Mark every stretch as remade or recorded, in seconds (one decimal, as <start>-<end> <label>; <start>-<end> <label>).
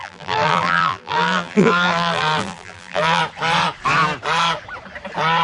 0.0-3.2 remade; 3.2-5.4 recorded